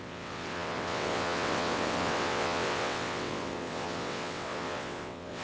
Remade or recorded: remade